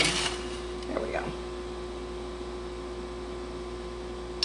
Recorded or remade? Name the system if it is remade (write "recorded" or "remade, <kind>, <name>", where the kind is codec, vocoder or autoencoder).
recorded